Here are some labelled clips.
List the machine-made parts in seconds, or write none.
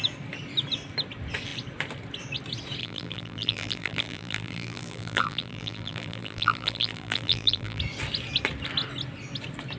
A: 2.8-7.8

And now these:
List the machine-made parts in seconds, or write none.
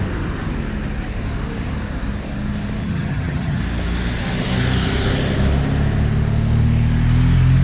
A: 2.8-3.6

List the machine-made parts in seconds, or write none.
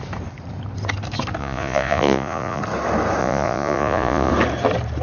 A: 1.4-2.6; 3.2-4.3